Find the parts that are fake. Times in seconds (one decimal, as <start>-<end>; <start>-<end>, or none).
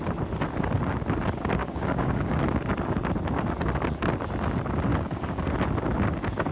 1.6-2.3; 4.9-5.5